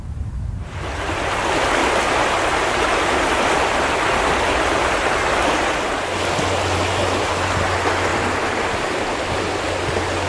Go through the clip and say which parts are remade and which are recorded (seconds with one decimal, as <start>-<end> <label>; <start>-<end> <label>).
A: 0.0-1.8 recorded; 1.8-5.1 remade; 5.1-8.1 recorded; 8.1-9.4 remade; 9.4-10.3 recorded